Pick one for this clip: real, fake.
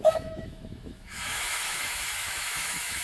fake